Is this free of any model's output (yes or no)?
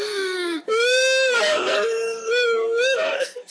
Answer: no